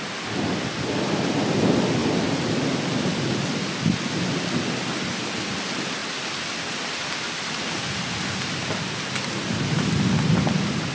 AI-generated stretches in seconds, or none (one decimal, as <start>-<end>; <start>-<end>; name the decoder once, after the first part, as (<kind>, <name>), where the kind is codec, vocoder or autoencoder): none